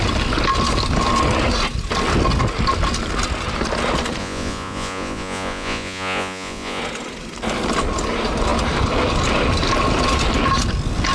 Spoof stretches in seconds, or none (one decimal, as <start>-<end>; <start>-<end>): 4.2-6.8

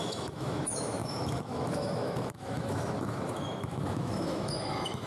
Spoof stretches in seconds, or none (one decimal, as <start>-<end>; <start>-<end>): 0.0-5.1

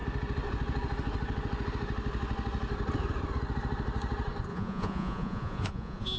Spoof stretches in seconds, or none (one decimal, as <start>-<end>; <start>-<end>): 4.5-6.2